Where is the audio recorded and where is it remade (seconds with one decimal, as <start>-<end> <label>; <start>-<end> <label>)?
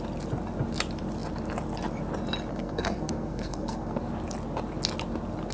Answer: 0.0-2.5 recorded; 2.5-4.0 remade; 4.0-5.5 recorded